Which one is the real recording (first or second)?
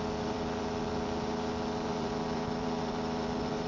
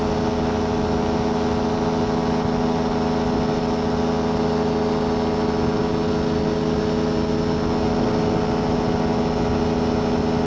second